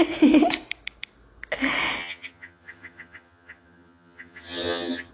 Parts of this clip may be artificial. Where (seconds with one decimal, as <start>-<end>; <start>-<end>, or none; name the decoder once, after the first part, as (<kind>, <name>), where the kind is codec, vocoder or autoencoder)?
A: 2.0-5.1 (vocoder, HiFi-GAN)

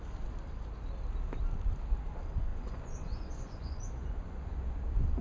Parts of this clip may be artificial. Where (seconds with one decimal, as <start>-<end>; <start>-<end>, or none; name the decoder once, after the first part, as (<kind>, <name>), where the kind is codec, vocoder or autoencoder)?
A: 2.5-4.8 (vocoder, Vocos)

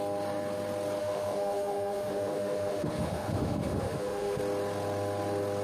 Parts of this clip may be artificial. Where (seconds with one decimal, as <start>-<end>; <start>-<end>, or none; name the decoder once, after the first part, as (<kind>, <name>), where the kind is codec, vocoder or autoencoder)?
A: 1.0-4.4 (autoencoder, DAC-VAE)